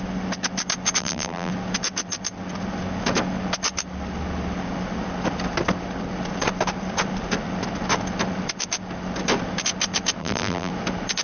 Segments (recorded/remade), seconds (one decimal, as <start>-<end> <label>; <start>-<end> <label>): 0.0-1.0 recorded; 1.0-1.5 remade; 1.5-10.2 recorded; 10.2-10.7 remade; 10.7-11.2 recorded